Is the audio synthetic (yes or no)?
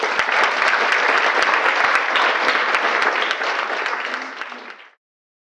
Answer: no